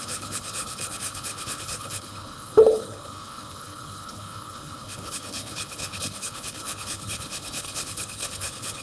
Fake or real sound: fake